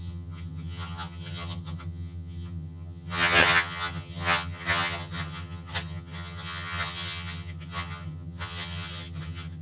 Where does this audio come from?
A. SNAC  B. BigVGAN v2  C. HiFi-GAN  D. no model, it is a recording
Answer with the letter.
C